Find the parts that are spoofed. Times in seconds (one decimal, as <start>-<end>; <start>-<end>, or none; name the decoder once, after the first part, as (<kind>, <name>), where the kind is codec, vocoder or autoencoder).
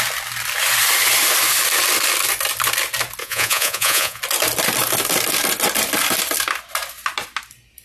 3.2-4.2 (vocoder, Vocos)